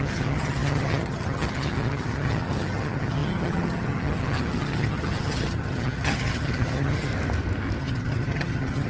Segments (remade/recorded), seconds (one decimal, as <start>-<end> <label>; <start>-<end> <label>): 0.0-7.1 remade; 7.1-7.8 recorded; 7.8-8.9 remade